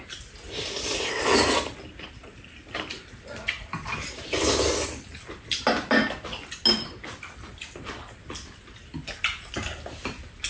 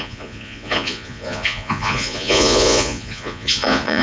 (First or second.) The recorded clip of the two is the first